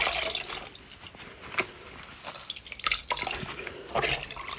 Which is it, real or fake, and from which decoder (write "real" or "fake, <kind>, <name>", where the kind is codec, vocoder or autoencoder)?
real